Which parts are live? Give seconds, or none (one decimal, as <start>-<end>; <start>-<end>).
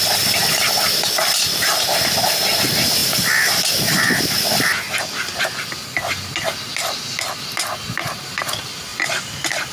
0.0-9.7